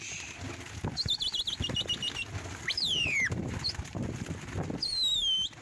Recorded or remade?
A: recorded